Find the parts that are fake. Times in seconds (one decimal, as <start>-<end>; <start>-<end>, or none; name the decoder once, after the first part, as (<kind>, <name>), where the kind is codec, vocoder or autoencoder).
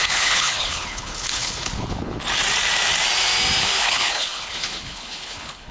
0.0-2.2 (codec, HILCodec); 3.6-5.7